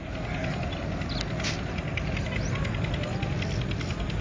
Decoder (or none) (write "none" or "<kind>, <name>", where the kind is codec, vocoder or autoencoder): none